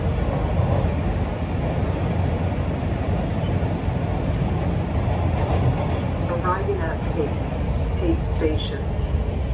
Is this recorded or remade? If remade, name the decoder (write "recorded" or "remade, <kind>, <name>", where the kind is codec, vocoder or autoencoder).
recorded